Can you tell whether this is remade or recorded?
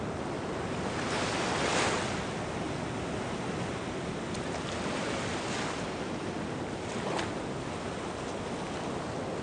recorded